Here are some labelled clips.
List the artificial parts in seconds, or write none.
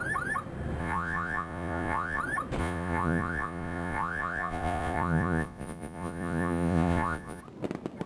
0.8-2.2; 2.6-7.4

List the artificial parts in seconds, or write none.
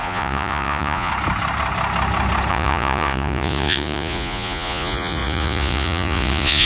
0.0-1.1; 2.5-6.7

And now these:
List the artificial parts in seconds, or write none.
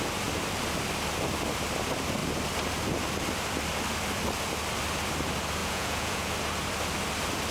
5.6-6.3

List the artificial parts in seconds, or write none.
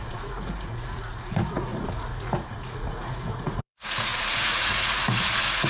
0.0-5.7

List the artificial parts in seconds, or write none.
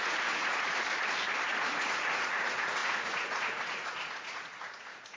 0.0-0.9; 1.5-5.2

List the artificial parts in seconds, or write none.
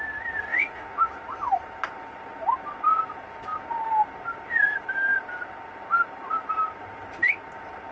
0.5-1.1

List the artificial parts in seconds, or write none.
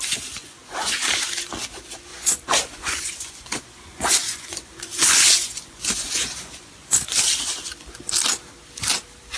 0.4-0.9; 2.1-7.2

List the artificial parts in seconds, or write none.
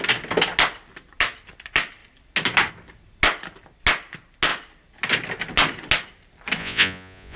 6.6-7.4